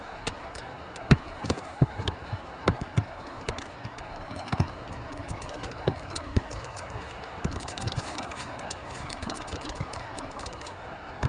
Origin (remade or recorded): remade